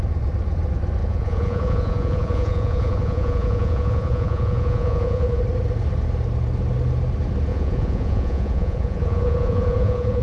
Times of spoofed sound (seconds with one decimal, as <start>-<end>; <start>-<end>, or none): 1.0-5.4; 7.5-10.2